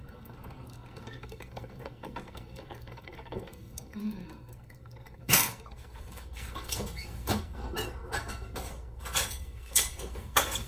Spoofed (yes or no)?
yes